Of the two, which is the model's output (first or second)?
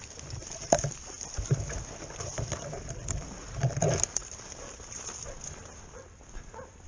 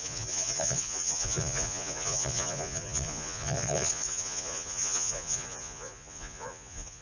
second